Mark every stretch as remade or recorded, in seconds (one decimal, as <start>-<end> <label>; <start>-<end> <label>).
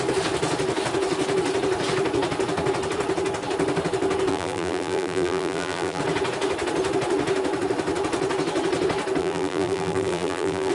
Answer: 0.0-4.3 recorded; 4.3-6.0 remade; 6.0-9.2 recorded; 9.2-10.7 remade